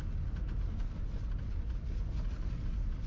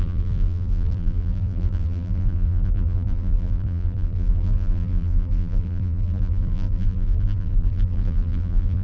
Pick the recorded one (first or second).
first